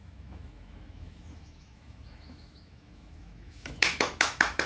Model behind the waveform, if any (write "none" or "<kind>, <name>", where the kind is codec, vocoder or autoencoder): autoencoder, DAC-VAE